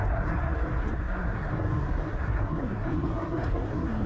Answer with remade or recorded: remade